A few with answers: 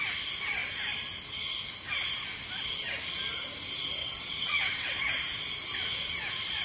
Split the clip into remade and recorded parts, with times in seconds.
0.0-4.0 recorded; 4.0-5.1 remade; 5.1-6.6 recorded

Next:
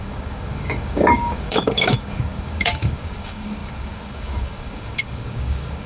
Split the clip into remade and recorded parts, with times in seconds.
0.0-5.9 remade

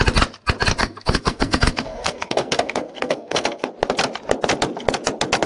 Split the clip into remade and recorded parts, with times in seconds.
0.0-0.8 recorded; 0.8-3.7 remade; 3.7-5.5 recorded

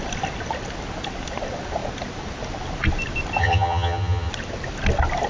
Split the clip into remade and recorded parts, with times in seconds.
0.0-3.4 recorded; 3.4-4.3 remade; 4.3-5.3 recorded

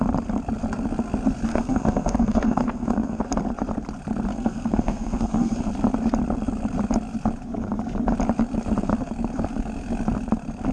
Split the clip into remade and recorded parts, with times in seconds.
0.0-1.5 recorded; 1.5-3.2 remade; 3.2-4.3 recorded; 4.3-5.7 remade; 5.7-10.7 recorded

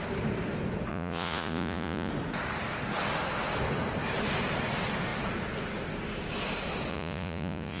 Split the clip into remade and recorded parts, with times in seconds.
0.0-0.9 recorded; 0.9-2.1 remade; 2.1-6.9 recorded; 6.9-7.8 remade

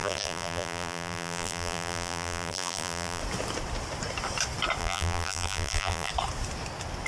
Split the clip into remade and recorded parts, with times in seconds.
0.0-3.2 remade; 3.2-4.8 recorded; 4.8-6.1 remade; 6.1-7.1 recorded

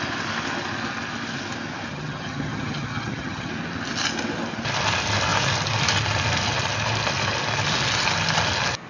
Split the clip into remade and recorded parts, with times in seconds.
0.0-1.9 recorded; 1.9-3.5 remade; 3.5-8.9 recorded